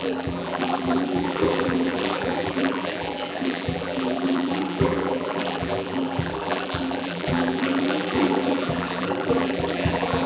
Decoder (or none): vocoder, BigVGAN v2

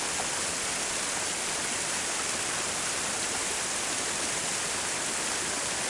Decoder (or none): none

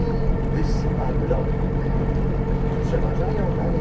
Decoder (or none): none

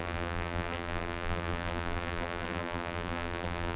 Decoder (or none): vocoder, BigVGAN v2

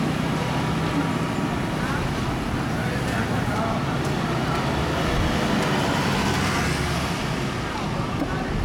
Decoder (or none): none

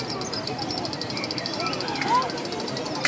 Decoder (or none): vocoder, BigVGAN v2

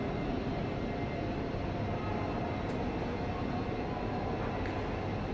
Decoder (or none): none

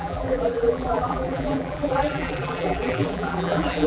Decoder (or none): vocoder, BigVGAN v2